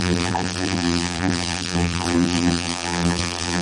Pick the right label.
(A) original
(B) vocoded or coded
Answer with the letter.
B